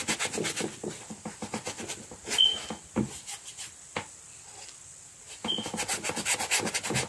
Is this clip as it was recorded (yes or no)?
yes